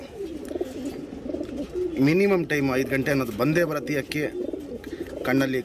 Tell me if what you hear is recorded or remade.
recorded